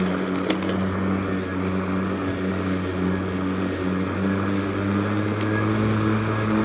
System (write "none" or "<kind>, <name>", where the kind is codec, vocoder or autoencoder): none